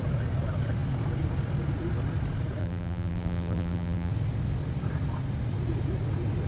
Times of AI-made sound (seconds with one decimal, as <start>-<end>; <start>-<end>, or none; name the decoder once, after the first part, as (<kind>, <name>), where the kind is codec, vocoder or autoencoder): 2.6-4.1 (vocoder, BigVGAN v2)